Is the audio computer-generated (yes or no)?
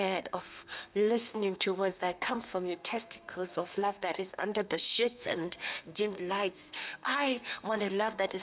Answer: yes